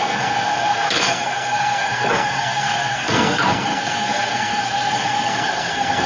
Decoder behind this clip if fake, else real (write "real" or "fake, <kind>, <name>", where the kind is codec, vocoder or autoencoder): fake, codec, SNAC